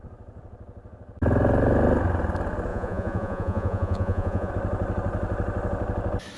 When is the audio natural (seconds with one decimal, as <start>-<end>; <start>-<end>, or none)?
0.0-2.7; 4.5-6.4

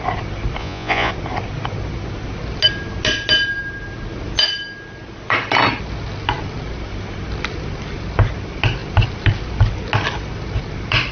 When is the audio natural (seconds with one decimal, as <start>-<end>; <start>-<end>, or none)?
0.0-0.6; 1.1-11.1

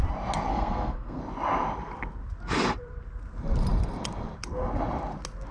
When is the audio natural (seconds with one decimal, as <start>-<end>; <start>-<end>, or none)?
0.0-0.5; 1.2-5.5

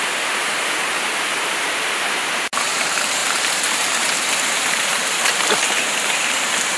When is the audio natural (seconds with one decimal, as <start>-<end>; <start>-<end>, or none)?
none